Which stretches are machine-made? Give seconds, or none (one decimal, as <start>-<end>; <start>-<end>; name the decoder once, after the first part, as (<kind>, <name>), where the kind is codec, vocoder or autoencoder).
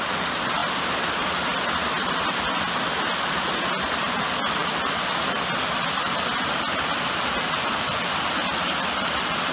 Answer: 4.0-4.7 (vocoder, BigVGAN v2)